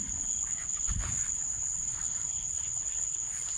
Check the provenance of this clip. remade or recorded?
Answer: remade